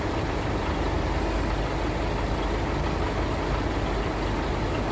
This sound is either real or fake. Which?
real